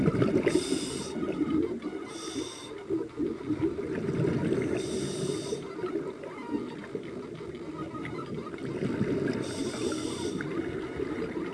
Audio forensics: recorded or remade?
recorded